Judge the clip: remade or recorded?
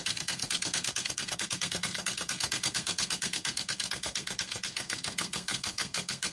remade